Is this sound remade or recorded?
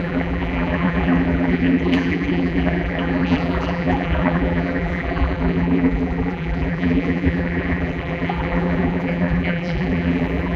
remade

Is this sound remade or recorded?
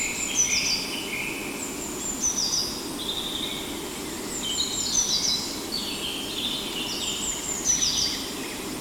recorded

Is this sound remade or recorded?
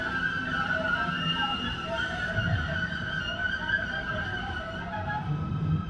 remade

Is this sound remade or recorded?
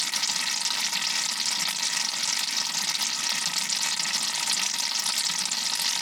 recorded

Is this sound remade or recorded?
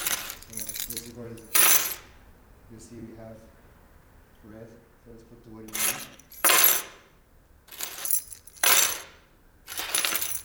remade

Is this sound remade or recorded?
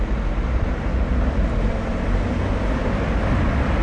recorded